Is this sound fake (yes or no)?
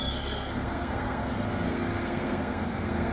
yes